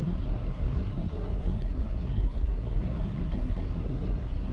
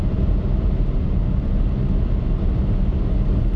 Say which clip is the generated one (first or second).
first